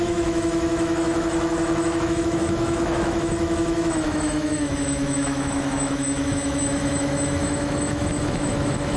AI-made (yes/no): yes